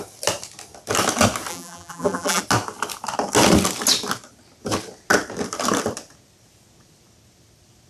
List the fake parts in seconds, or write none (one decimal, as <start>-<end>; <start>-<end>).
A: 1.5-2.4